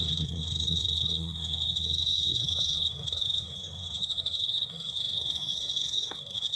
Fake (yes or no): yes